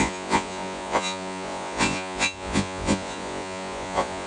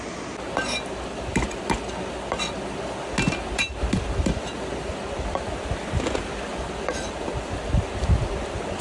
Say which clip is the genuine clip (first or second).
second